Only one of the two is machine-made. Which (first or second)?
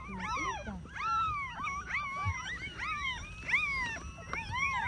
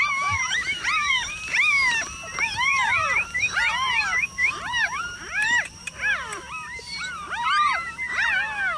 second